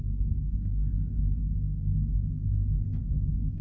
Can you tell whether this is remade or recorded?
remade